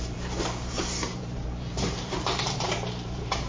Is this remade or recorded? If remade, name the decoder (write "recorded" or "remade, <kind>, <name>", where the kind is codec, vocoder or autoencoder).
remade, vocoder, BigVGAN v2